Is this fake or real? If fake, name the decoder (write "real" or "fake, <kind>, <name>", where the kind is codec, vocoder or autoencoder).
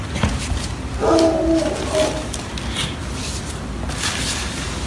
real